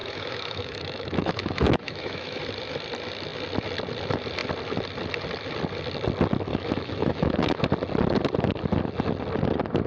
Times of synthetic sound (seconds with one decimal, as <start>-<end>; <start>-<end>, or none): 0.0-2.4; 6.5-7.6